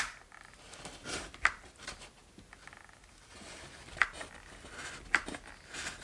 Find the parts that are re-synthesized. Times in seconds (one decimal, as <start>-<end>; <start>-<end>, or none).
none

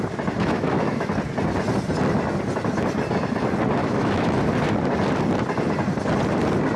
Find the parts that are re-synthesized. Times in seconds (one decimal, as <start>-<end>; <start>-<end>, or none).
0.4-1.1; 3.8-4.4